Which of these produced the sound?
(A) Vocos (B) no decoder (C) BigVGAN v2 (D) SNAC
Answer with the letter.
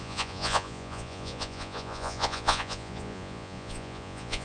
A